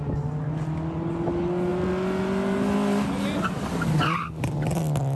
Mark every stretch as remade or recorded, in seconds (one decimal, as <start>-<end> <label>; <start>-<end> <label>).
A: 0.0-5.2 recorded